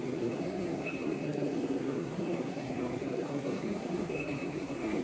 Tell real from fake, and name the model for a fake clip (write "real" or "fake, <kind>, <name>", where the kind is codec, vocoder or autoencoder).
fake, codec, SNAC